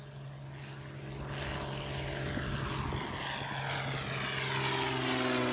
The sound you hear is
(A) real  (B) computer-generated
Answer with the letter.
A